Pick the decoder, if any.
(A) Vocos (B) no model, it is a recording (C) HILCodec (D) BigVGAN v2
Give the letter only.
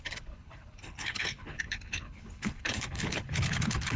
C